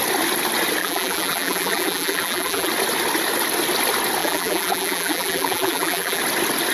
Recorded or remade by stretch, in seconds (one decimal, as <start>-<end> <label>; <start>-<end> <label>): 0.0-0.8 recorded; 0.8-2.7 remade; 2.7-4.2 recorded; 4.2-6.2 remade; 6.2-6.7 recorded